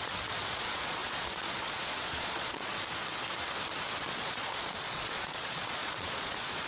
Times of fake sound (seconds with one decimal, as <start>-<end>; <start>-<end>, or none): 0.0-2.7; 4.0-6.7

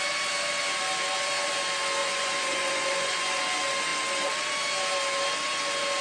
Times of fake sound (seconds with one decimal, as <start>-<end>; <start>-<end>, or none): 2.0-3.4

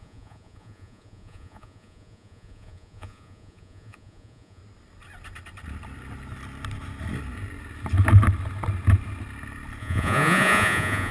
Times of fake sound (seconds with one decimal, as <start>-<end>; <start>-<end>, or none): 0.0-4.6; 9.8-11.1

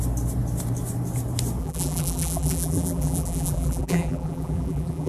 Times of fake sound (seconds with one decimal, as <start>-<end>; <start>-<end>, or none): 1.6-5.1

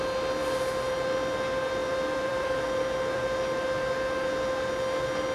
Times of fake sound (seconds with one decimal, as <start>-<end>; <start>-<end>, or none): 1.8-3.2

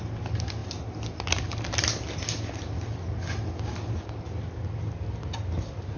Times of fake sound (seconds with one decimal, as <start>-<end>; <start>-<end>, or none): none

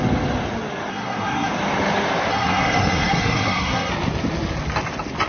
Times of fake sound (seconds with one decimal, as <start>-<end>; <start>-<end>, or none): 0.9-1.5; 2.3-3.9